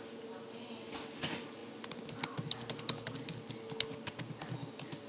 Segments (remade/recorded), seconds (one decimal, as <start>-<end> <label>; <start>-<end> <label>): 0.0-5.1 recorded